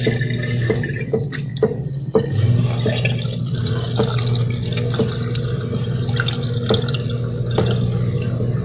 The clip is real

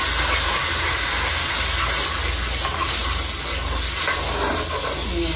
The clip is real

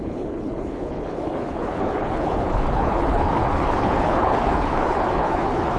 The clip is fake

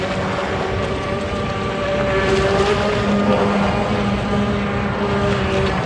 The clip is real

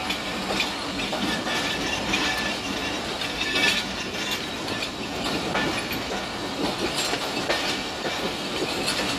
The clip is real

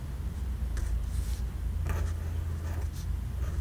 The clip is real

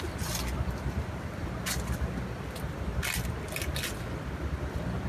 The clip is real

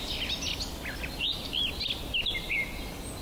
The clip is real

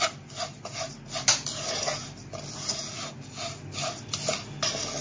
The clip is real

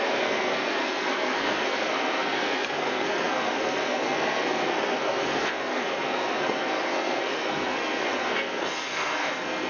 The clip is fake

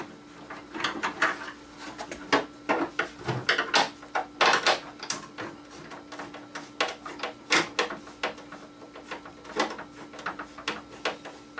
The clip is real